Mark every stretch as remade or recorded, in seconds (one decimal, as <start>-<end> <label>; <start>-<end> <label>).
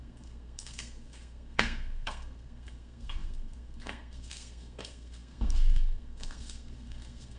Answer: 0.0-7.4 remade